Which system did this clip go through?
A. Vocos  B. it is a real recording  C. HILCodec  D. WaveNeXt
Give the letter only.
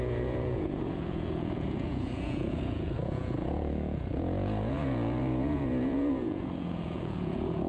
A